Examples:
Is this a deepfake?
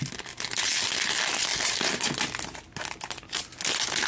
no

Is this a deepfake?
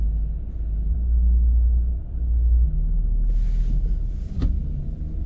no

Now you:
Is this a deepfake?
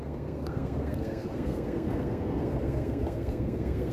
yes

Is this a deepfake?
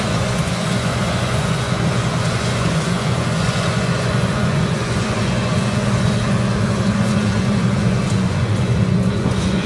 yes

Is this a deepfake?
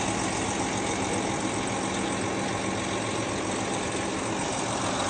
no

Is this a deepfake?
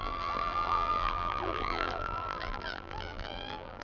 yes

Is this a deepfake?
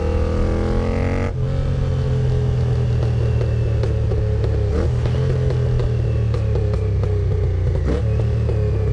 no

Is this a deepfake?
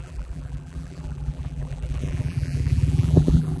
yes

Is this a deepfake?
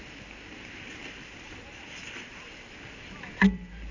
no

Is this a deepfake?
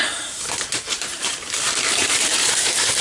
yes